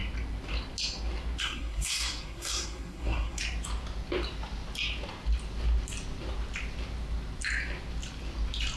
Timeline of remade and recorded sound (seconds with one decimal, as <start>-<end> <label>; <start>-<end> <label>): 0.0-1.4 recorded; 1.4-3.4 remade; 3.4-8.8 recorded